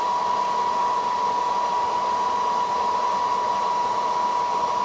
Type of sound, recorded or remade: remade